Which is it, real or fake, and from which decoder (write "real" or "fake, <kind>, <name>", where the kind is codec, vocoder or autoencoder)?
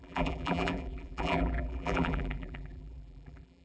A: fake, vocoder, BigVGAN v2